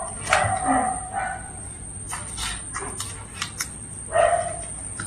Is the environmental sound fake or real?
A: real